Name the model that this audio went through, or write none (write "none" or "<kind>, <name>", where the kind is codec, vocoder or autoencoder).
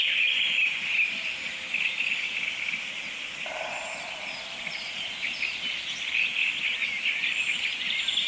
none